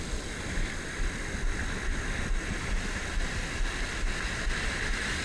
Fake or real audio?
real